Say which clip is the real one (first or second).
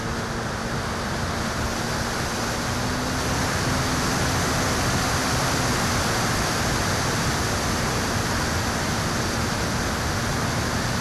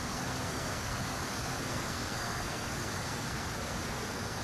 first